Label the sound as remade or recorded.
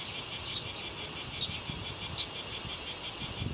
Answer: recorded